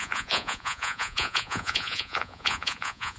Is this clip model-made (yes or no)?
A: yes